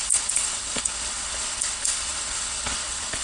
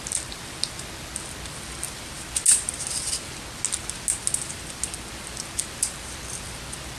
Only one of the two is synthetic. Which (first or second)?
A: first